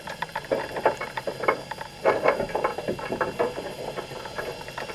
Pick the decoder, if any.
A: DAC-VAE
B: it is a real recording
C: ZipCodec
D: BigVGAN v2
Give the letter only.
B